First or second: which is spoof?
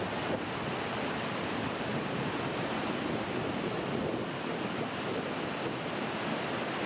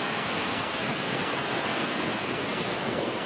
second